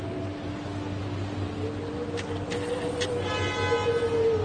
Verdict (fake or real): real